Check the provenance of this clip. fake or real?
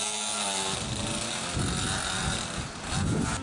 real